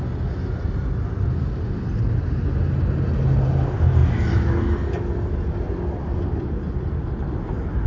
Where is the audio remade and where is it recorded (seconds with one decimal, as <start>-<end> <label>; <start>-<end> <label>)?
0.0-7.9 recorded

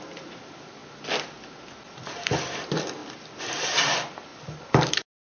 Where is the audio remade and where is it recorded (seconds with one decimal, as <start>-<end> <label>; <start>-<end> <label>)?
0.0-5.4 recorded